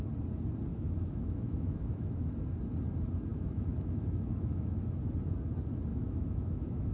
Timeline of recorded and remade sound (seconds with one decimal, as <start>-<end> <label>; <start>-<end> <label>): 0.0-0.7 recorded; 0.7-2.3 remade; 2.3-3.3 recorded; 3.3-5.0 remade; 5.0-5.9 recorded; 5.9-6.9 remade